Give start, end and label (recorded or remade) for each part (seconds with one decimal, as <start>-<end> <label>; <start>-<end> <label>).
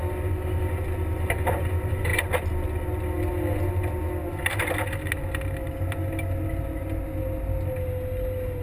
0.0-8.6 recorded